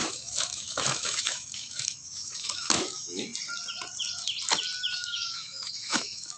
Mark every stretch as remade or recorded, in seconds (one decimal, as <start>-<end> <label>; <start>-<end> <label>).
0.0-3.3 remade; 3.3-4.8 recorded; 4.8-6.4 remade